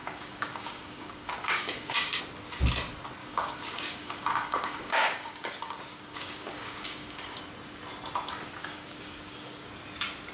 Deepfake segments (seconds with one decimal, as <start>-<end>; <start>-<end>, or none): 0.0-2.2; 3.2-7.4; 8.6-9.7